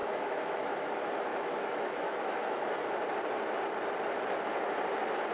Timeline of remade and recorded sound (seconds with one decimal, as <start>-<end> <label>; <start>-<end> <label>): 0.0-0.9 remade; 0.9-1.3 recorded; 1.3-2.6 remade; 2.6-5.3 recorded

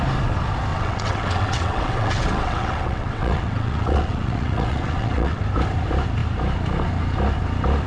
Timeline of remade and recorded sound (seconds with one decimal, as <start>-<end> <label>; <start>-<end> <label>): 0.0-0.7 recorded; 0.7-5.4 remade; 5.4-7.9 recorded

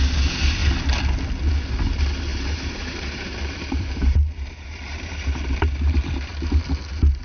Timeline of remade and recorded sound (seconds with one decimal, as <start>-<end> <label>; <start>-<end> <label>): 0.0-2.3 recorded; 2.3-6.6 remade; 6.6-7.2 recorded

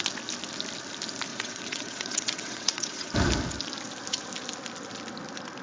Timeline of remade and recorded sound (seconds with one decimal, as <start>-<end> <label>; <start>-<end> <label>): 0.0-1.3 recorded; 1.3-3.1 remade; 3.1-5.6 recorded